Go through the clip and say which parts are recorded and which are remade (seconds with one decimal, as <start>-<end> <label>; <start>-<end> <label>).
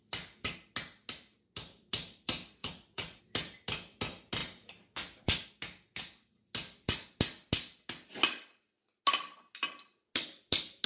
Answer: 0.0-2.6 recorded; 2.6-3.2 remade; 3.2-10.9 recorded